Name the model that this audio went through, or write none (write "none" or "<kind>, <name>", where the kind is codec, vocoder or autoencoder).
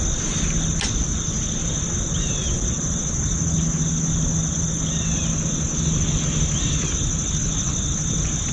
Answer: none